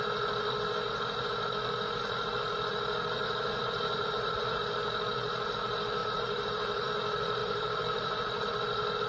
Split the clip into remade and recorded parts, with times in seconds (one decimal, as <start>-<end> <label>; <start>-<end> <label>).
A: 0.0-6.0 recorded; 6.0-6.9 remade; 6.9-7.4 recorded; 7.4-8.5 remade; 8.5-9.1 recorded